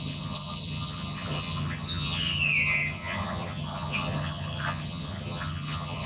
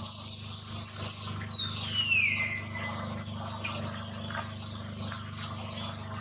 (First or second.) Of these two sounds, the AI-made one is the first